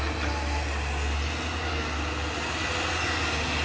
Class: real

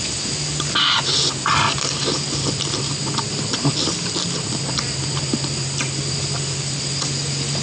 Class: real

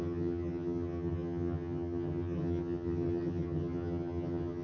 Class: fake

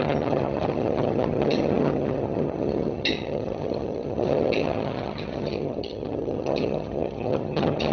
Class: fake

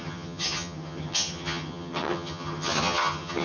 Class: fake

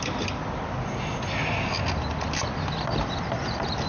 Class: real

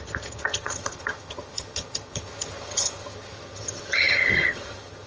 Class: fake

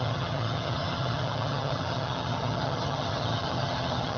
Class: fake